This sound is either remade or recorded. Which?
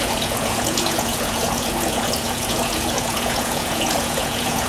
remade